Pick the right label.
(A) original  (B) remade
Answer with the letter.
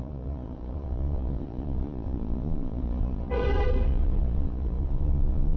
B